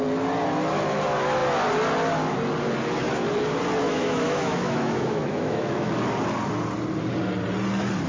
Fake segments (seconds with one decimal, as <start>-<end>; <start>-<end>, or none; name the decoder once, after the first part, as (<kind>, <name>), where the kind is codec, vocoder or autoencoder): 3.8-5.9 (autoencoder, DAC-VAE)